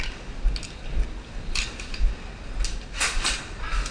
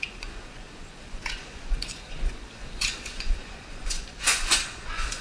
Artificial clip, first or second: second